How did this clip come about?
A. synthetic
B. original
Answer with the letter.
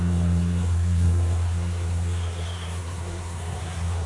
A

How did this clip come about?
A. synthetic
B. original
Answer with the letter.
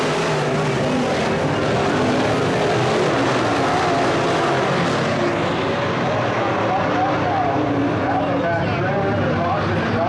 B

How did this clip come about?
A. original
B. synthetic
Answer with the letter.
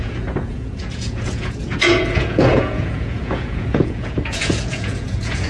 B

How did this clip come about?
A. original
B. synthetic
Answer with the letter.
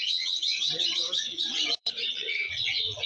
B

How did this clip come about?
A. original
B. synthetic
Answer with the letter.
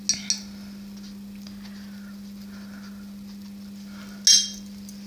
A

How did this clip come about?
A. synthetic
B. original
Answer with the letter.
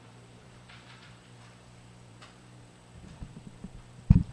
A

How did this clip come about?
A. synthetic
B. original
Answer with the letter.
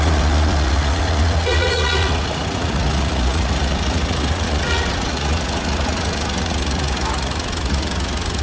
A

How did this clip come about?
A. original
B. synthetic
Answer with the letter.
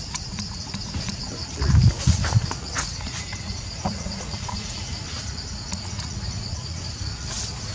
B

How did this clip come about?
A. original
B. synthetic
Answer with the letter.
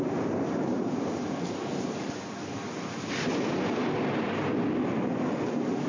A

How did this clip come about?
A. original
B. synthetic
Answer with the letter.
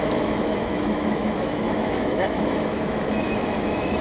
B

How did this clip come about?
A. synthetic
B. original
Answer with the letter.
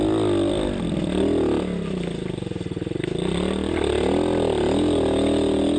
B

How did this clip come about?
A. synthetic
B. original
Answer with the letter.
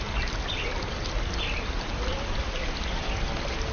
B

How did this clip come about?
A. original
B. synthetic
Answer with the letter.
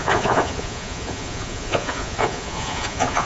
B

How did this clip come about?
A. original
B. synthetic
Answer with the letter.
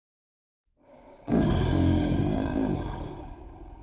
B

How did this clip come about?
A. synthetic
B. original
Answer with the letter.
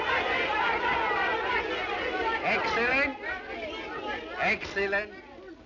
B